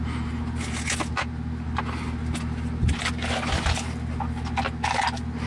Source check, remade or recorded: recorded